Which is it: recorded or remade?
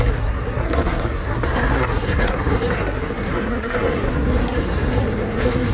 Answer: remade